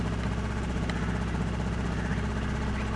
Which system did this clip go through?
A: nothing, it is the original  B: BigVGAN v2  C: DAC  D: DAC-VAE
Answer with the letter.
A